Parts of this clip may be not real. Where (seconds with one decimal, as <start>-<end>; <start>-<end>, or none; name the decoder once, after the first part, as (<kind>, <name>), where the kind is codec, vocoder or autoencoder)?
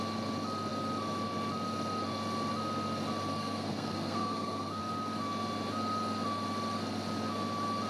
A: 3.4-4.8 (codec, SNAC)